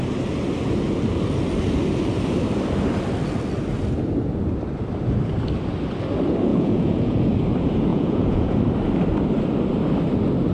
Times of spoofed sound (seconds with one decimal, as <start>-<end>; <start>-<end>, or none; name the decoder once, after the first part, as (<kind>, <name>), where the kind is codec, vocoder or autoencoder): 6.5-7.3 (vocoder, Vocos); 7.9-8.6